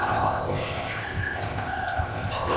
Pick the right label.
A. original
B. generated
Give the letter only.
B